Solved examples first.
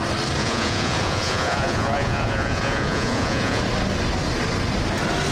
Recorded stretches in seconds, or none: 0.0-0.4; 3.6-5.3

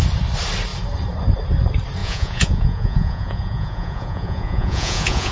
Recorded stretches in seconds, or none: 0.0-2.0

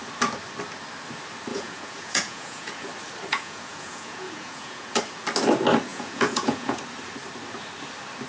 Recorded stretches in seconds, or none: 0.0-1.5; 2.9-3.3; 5.0-5.9; 6.8-8.3

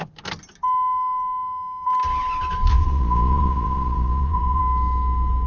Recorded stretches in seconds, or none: 0.0-2.7; 4.6-5.5

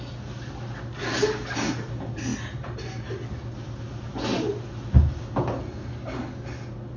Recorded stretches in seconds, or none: 0.0-7.0